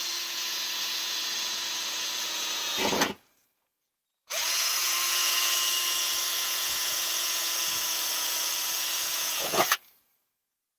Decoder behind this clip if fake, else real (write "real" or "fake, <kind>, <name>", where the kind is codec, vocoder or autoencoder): fake, vocoder, Vocos